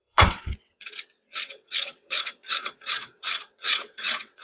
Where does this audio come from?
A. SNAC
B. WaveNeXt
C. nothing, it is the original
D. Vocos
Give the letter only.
B